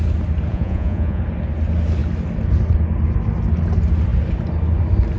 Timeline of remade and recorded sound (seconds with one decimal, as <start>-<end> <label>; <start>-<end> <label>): 0.0-0.5 recorded; 0.5-1.2 remade; 1.2-5.2 recorded